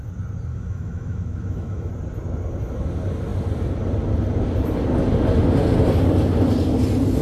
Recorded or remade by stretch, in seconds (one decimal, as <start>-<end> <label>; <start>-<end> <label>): 0.0-0.5 recorded; 0.5-1.9 remade; 1.9-7.2 recorded